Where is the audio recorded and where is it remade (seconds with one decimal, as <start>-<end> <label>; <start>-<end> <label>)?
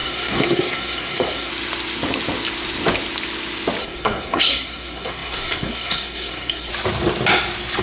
0.0-1.5 remade; 1.5-3.8 recorded; 3.8-6.7 remade; 6.7-7.8 recorded